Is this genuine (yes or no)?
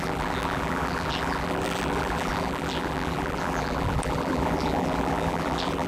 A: no